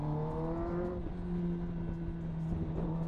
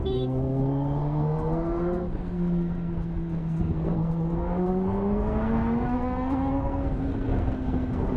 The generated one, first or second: second